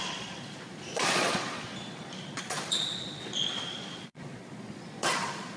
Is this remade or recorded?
remade